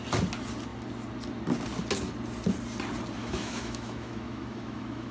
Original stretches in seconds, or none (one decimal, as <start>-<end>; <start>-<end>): 0.0-3.2